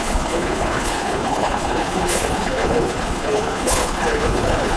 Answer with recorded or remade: remade